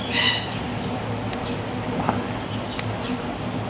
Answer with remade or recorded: recorded